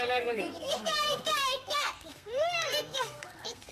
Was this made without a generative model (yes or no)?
no